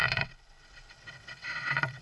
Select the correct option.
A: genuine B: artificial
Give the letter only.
B